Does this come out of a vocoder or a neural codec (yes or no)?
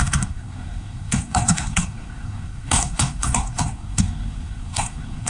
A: yes